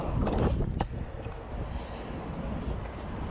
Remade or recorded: recorded